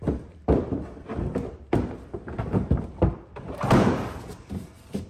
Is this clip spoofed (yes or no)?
yes